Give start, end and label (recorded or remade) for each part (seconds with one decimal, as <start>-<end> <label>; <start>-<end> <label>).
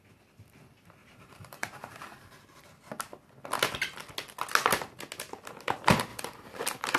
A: 0.0-1.0 recorded; 1.0-2.7 remade; 2.7-6.1 recorded; 6.1-6.6 remade; 6.6-7.0 recorded